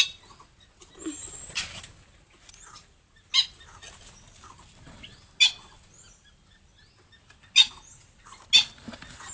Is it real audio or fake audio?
real